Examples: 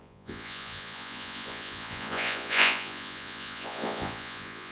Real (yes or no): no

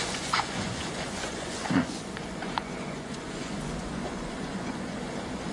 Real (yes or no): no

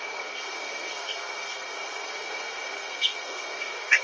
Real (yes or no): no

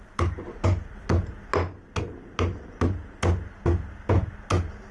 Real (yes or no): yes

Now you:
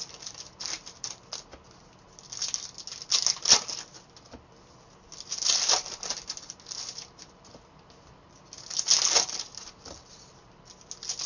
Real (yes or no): yes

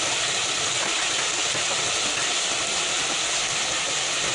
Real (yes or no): yes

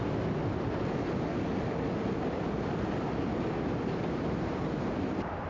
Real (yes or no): yes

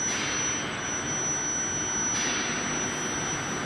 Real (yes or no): yes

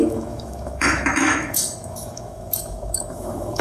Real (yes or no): no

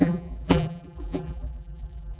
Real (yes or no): no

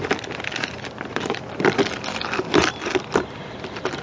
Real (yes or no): no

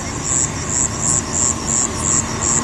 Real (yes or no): yes